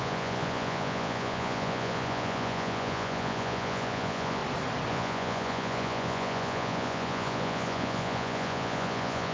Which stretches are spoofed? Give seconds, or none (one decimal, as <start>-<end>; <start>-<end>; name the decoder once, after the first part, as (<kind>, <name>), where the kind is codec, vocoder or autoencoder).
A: 0.0-4.4 (vocoder, Vocos); 4.9-9.3